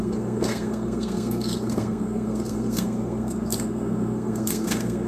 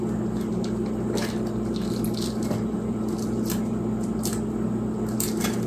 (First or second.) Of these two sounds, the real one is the second